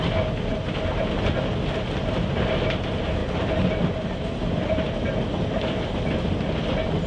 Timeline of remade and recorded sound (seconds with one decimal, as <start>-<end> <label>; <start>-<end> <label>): 0.0-7.1 recorded